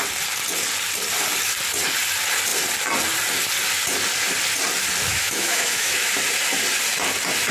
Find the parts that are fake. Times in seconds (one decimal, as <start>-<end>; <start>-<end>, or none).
5.1-6.1